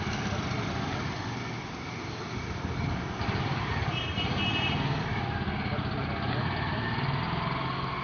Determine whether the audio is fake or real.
real